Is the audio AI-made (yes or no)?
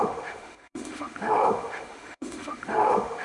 yes